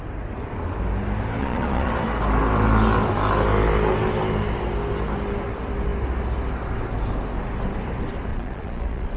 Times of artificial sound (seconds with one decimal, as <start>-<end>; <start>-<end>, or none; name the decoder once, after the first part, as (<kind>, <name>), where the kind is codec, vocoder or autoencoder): 1.4-1.9 (vocoder, Vocos); 8.3-9.2

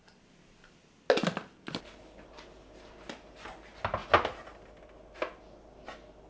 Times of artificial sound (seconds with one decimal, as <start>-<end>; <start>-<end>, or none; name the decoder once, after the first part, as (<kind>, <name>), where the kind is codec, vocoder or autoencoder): none

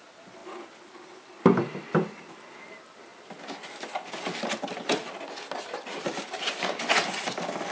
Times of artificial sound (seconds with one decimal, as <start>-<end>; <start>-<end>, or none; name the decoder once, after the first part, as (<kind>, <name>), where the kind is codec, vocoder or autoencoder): none